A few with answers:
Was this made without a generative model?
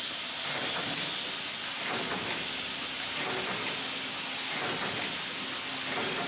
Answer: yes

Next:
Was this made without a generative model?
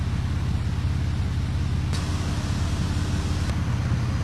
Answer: yes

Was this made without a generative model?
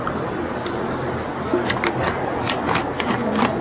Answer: yes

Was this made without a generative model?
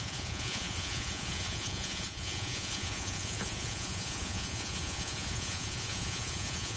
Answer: no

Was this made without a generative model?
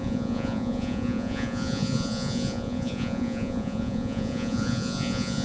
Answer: no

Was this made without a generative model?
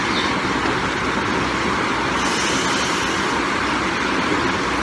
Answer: yes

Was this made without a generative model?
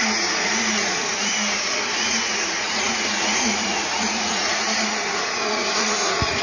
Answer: no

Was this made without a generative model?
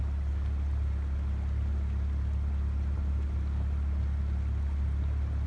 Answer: yes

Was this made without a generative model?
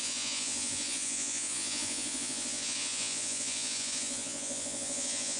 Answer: no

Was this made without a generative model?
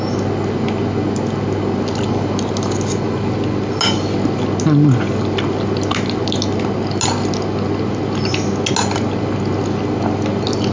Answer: yes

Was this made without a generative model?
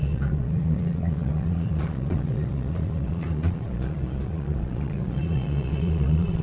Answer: no